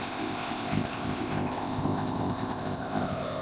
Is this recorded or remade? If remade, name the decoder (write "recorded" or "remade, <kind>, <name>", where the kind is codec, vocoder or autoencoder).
remade, codec, ZipCodec